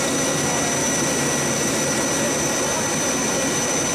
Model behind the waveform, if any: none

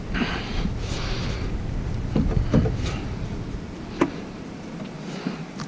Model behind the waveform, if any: none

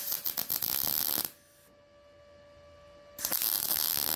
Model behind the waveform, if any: none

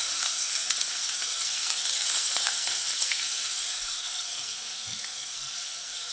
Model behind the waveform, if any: codec, SNAC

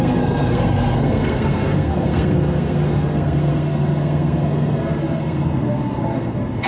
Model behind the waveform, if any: codec, SNAC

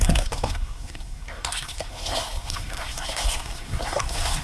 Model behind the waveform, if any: codec, SNAC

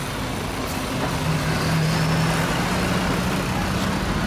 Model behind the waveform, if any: none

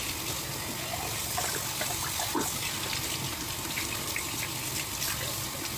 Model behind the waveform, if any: none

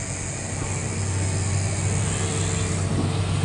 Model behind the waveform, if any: none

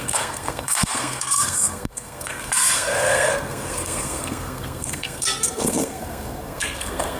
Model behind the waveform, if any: codec, SNAC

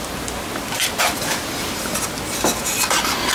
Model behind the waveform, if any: none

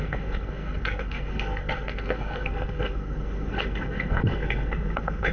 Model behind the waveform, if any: codec, SNAC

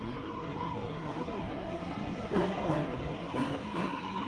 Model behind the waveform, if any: codec, SNAC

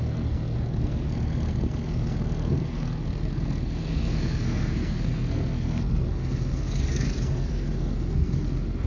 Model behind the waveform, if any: codec, SNAC